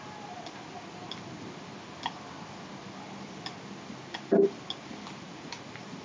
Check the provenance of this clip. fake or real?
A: real